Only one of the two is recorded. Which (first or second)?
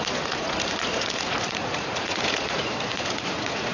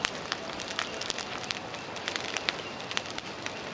second